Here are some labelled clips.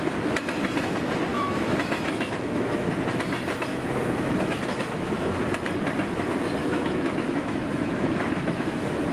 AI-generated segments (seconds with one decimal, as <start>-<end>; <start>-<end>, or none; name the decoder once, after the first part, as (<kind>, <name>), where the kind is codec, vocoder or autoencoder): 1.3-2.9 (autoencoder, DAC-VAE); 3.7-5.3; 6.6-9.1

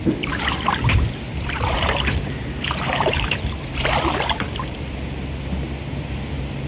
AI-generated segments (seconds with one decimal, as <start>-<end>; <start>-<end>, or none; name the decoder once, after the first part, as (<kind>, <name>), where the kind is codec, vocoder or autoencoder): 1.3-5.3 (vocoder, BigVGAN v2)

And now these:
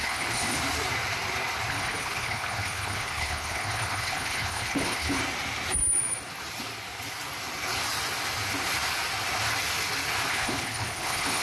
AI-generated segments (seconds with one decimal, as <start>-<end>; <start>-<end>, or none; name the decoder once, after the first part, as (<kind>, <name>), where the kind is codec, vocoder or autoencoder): 0.0-0.6 (codec, HILCodec); 1.7-5.2; 10.3-11.4

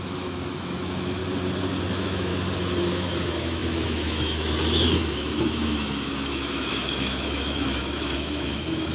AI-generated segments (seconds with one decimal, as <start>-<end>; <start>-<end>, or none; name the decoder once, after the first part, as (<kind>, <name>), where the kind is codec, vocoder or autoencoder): 0.0-1.2 (autoencoder, DAC-VAE); 1.9-2.3; 2.8-8.9

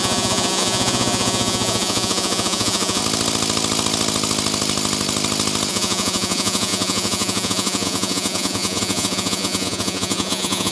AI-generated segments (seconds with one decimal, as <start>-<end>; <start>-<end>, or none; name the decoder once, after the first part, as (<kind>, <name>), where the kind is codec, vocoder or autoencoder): 0.0-3.0 (vocoder, Vocos); 5.7-10.7

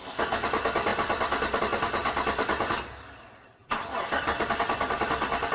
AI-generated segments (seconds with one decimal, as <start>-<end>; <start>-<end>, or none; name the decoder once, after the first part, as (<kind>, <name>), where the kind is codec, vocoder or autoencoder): 2.0-3.1 (vocoder, BigVGAN v2); 3.6-4.6